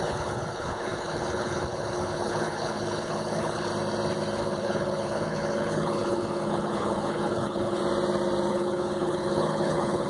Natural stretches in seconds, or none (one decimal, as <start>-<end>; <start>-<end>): 3.7-4.4; 7.8-8.5